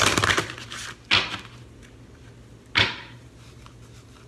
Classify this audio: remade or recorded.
recorded